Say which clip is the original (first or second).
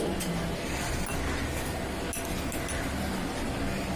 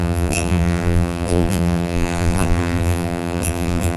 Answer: first